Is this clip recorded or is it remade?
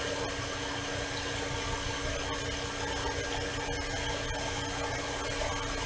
recorded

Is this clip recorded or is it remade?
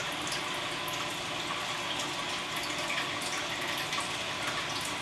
recorded